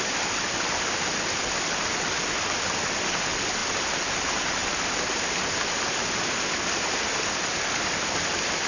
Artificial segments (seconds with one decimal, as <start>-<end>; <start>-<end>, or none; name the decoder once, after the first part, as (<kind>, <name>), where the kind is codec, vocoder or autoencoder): none